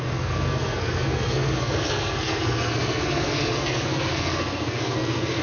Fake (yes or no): yes